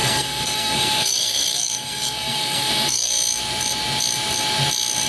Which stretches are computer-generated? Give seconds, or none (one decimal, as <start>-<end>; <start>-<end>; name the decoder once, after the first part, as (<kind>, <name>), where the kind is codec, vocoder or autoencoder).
0.0-3.1 (codec, SNAC)